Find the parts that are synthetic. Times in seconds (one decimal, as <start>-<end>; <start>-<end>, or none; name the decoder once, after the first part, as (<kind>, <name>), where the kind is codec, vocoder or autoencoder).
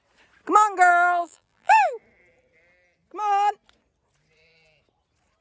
1.2-1.9 (vocoder, BigVGAN v2)